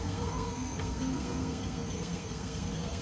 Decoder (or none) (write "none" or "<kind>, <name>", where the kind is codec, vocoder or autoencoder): codec, SNAC